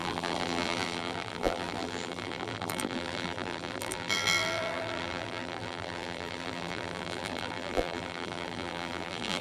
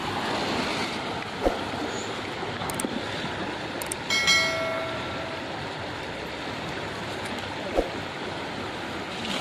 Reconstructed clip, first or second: first